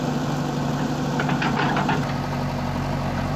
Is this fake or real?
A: real